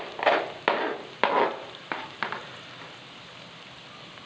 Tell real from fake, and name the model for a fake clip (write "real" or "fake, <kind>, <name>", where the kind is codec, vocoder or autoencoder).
real